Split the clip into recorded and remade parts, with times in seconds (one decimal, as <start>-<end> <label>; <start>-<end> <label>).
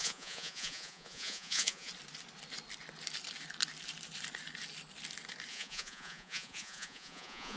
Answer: 0.0-1.9 remade; 1.9-5.5 recorded; 5.5-7.6 remade